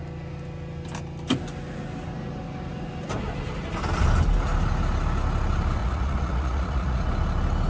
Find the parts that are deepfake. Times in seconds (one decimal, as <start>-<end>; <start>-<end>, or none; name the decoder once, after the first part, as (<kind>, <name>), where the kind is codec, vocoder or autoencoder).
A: 5.8-7.1 (vocoder, Vocos)